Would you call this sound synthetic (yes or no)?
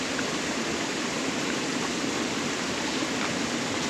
no